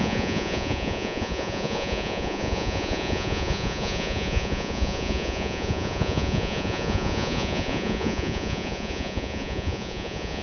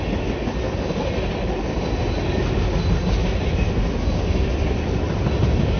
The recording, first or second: second